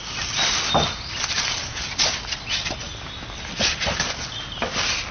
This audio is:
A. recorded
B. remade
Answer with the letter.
A